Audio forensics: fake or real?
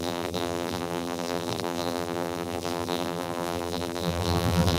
fake